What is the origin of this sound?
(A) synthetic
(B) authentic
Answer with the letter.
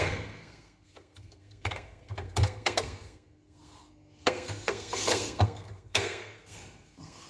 A